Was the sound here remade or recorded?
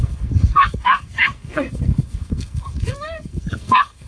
remade